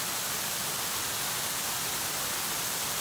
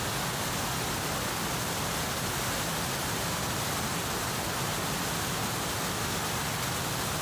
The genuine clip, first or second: second